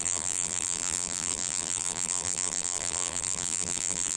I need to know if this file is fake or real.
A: fake